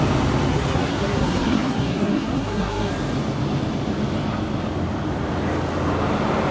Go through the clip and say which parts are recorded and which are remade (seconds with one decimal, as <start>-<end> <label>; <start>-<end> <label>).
0.0-0.5 recorded; 0.5-2.9 remade; 2.9-6.5 recorded